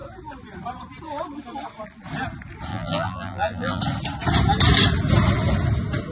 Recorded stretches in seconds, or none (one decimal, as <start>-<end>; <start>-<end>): 0.0-2.7; 3.8-6.1